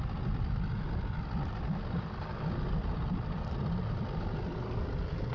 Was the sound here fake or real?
real